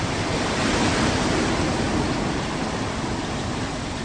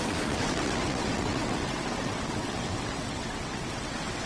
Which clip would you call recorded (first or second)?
first